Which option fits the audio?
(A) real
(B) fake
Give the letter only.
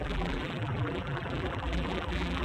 B